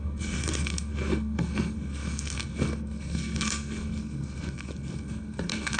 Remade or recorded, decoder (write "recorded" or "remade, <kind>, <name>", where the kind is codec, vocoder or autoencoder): remade, codec, SNAC